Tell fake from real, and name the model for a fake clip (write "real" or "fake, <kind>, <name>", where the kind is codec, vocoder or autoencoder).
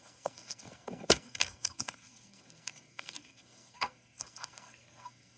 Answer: fake, codec, SNAC